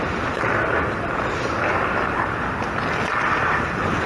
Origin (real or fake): real